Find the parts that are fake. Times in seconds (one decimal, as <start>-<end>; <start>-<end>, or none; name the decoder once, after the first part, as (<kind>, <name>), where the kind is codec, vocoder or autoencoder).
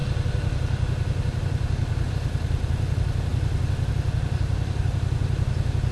2.1-3.3 (vocoder, BigVGAN v2); 3.9-5.9